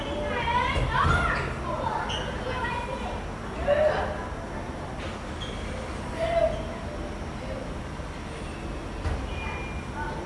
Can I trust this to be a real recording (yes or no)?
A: yes